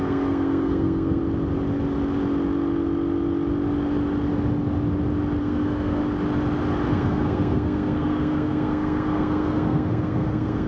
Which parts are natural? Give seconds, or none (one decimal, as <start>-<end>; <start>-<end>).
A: 1.2-5.4; 6.0-6.9